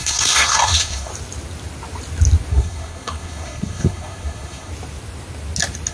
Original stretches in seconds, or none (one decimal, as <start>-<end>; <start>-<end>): 1.1-2.5; 4.7-5.9